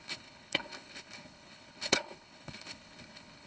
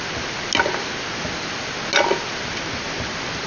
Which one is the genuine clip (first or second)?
second